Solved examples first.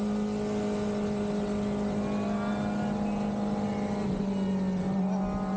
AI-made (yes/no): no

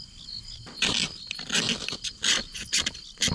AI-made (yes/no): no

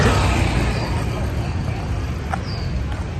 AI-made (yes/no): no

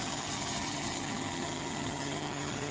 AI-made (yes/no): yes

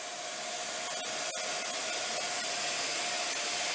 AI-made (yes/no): no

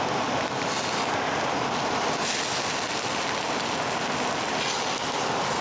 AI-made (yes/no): no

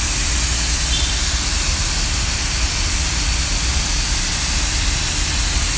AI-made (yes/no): no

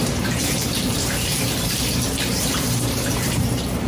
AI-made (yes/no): yes